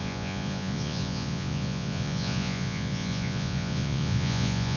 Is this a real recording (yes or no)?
no